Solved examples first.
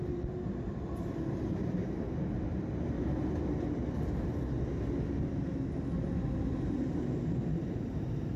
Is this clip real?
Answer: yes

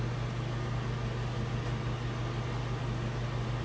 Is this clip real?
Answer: yes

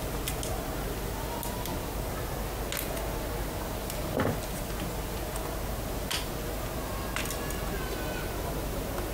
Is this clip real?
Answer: yes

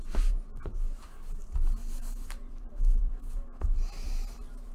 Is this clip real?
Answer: no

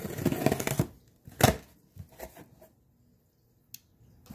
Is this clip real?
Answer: yes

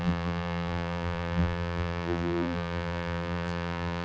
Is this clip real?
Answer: no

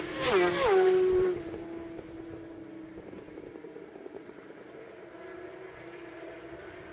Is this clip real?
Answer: no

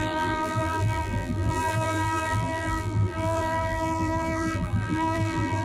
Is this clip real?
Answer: no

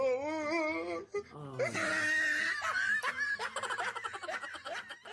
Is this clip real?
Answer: yes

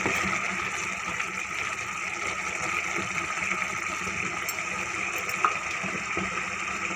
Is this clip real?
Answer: yes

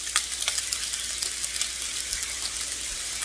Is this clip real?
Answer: yes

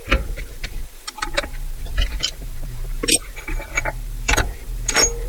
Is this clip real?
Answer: no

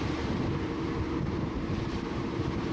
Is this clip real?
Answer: no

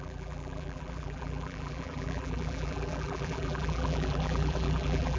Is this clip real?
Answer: no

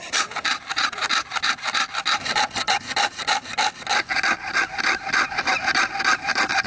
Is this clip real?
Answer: yes